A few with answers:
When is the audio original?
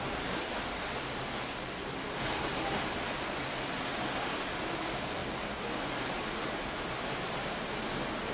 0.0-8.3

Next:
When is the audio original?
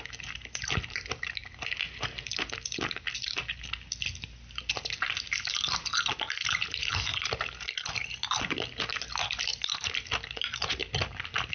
0.0-11.5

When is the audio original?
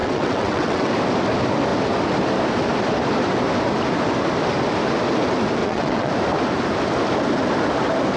0.9-5.6; 6.1-8.2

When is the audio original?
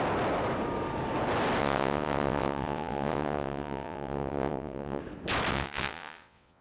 0.0-1.6; 5.0-5.5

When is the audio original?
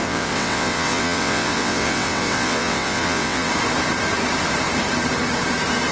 3.5-5.9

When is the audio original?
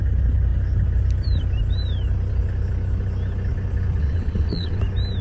0.0-4.0; 4.8-5.2